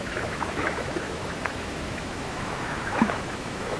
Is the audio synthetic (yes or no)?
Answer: yes